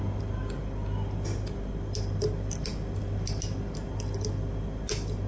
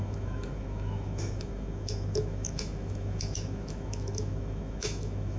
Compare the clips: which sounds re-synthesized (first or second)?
second